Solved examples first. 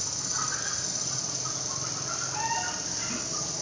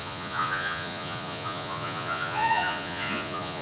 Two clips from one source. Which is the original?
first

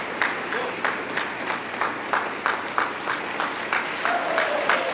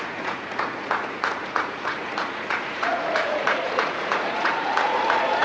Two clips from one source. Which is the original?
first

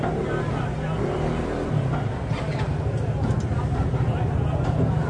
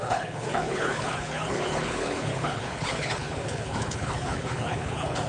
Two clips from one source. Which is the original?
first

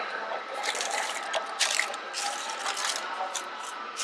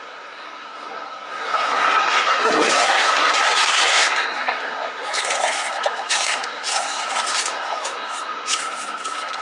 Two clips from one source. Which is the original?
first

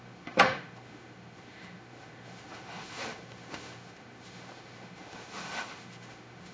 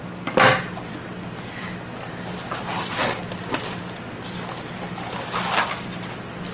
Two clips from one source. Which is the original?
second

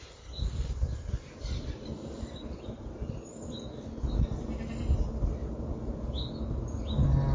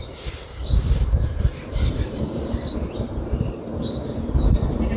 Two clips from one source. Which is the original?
first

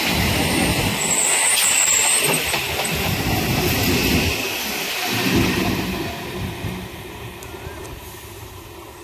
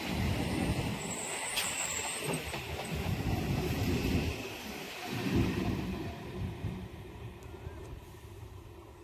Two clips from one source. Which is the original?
first